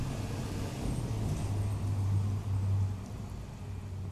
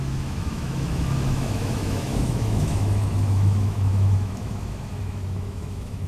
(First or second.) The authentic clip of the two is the first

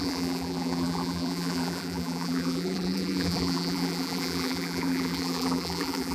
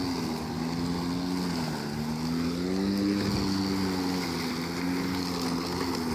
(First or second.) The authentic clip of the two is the second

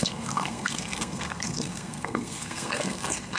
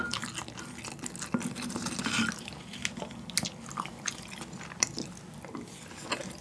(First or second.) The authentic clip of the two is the second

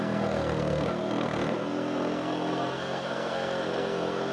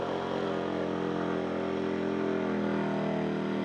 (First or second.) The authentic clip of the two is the second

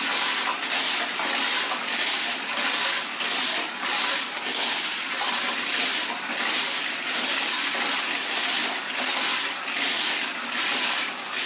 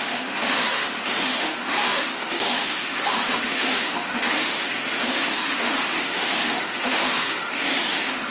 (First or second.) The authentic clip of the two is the first